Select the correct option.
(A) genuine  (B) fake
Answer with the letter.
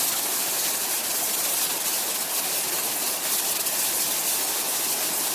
A